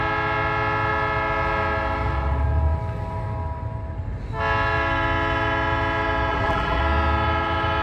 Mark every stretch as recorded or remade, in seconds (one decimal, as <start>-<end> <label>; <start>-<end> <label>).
0.0-6.3 recorded; 6.3-6.8 remade; 6.8-7.8 recorded